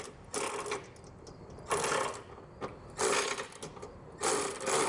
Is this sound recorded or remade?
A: recorded